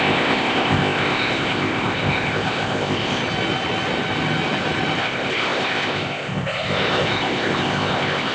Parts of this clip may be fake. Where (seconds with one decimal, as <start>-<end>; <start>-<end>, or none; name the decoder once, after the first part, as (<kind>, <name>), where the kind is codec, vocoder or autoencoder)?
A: 0.0-3.2 (codec, ZipCodec); 5.0-8.3